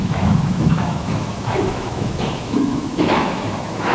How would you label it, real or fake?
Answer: fake